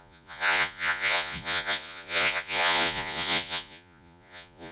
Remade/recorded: remade